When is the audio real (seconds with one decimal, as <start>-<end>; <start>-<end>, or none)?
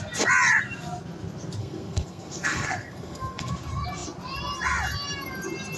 0.0-1.6; 3.5-5.8